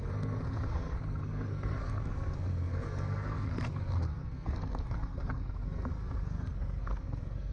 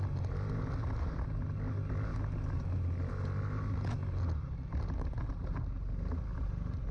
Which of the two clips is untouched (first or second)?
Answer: second